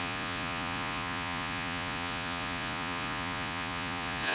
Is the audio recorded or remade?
remade